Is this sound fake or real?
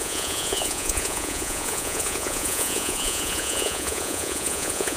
fake